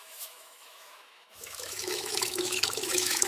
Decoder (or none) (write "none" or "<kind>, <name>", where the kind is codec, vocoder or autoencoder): autoencoder, DAC-VAE